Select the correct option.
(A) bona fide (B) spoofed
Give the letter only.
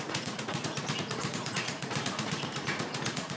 B